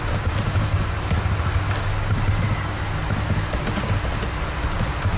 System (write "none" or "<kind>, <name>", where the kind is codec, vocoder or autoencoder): none